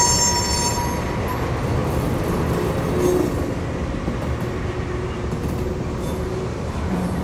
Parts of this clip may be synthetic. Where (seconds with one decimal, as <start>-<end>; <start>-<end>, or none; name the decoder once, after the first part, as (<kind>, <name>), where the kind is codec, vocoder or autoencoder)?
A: none